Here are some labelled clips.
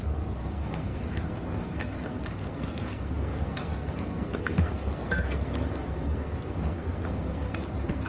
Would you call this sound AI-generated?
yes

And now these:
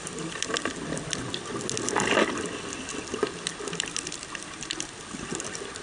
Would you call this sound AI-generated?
no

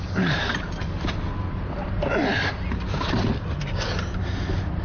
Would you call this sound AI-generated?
no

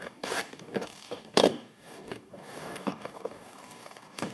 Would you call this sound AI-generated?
yes